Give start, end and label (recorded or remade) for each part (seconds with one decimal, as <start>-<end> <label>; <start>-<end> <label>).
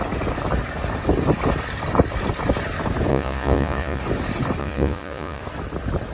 0.0-3.1 recorded; 3.1-4.0 remade; 4.0-4.6 recorded; 4.6-5.4 remade; 5.4-6.1 recorded